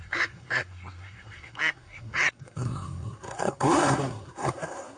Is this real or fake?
fake